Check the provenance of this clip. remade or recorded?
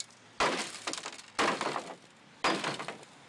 recorded